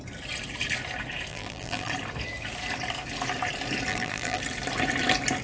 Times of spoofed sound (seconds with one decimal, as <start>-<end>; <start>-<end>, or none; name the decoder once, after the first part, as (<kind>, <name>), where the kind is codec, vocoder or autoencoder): 1.3-1.9 (vocoder, BigVGAN v2); 3.9-4.4